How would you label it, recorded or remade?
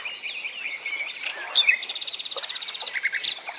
recorded